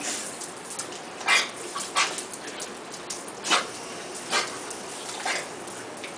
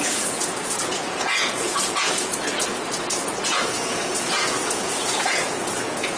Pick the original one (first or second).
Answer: first